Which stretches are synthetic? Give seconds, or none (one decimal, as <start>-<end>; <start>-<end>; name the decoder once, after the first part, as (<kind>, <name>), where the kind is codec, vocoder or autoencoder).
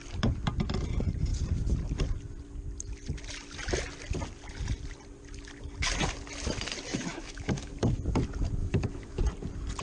6.9-7.7 (autoencoder, DAC-VAE); 8.6-9.2